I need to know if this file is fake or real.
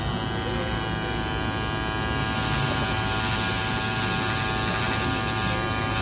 real